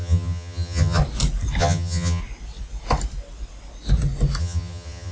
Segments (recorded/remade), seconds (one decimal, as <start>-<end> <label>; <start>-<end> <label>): 0.0-1.0 remade; 1.0-1.6 recorded; 1.6-2.2 remade; 2.2-4.4 recorded; 4.4-5.1 remade